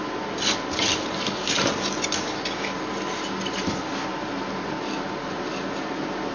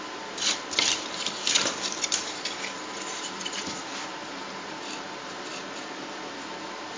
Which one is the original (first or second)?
first